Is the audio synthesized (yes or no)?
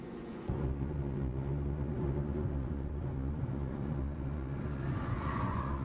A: yes